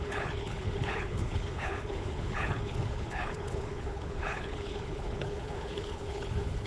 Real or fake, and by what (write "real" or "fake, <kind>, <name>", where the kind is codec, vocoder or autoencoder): fake, codec, HILCodec